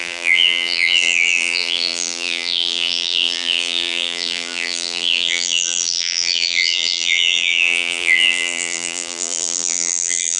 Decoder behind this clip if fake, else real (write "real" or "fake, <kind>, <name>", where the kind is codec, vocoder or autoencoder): fake, vocoder, BigVGAN v2